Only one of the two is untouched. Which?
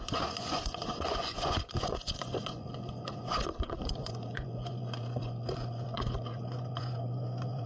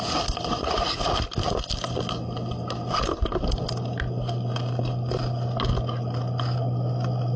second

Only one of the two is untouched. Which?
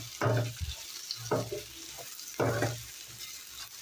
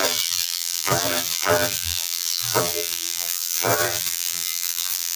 first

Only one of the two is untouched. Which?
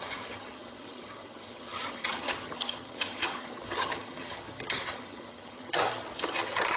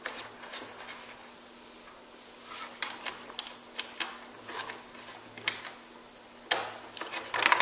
second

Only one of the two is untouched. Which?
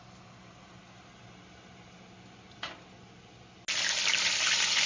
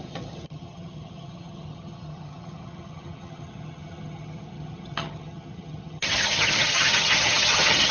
first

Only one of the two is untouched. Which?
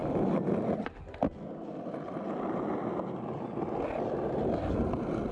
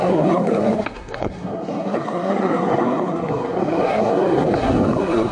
first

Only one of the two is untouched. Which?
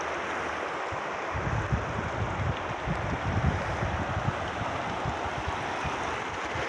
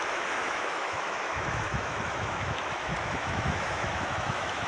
first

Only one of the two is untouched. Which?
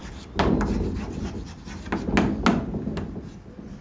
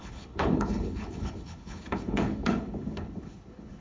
first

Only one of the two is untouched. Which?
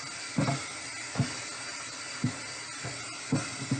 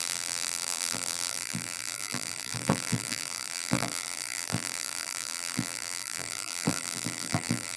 first